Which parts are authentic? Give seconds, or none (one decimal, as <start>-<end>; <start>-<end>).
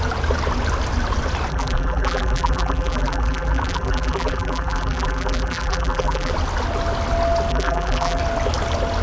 0.0-1.5; 6.3-7.5; 8.2-9.0